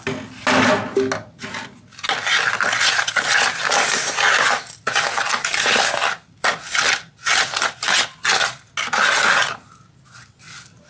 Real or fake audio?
real